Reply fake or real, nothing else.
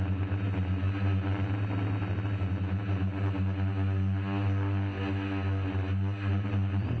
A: real